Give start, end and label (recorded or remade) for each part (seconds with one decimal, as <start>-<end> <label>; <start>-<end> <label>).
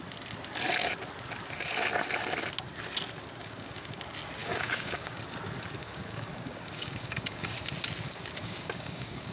0.0-3.4 recorded; 3.4-4.0 remade; 4.0-4.4 recorded; 4.4-5.2 remade; 5.2-5.8 recorded; 5.8-7.5 remade; 7.5-8.4 recorded; 8.4-9.3 remade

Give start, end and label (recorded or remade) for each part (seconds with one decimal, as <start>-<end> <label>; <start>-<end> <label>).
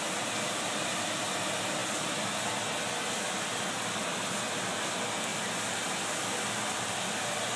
0.0-7.6 recorded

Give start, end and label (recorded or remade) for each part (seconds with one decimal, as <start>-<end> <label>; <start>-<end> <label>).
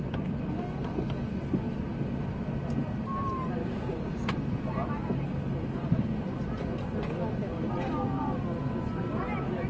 0.0-3.6 recorded; 3.6-4.3 remade; 4.3-9.7 recorded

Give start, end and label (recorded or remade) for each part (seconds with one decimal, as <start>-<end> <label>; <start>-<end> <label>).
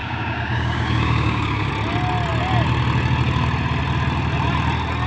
0.0-1.7 remade; 1.7-5.1 recorded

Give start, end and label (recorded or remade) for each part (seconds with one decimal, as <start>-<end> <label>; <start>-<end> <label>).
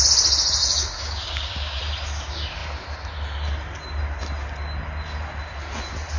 0.0-0.6 recorded; 0.6-1.8 remade; 1.8-6.2 recorded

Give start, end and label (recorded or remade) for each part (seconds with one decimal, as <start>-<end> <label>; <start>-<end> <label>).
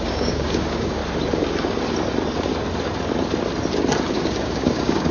0.0-1.0 remade; 1.0-4.1 recorded; 4.1-5.1 remade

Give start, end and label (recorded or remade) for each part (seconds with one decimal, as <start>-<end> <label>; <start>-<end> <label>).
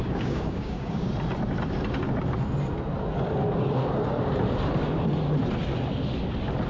0.0-1.1 remade; 1.1-6.7 recorded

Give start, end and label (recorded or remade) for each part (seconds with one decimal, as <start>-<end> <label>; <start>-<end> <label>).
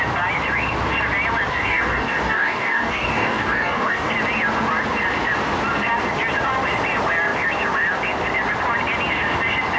0.0-1.5 recorded; 1.5-4.1 remade; 4.1-9.8 recorded